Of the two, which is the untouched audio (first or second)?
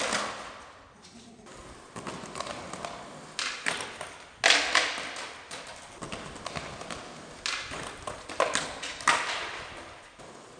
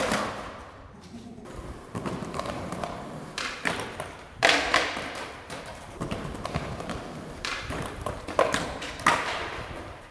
first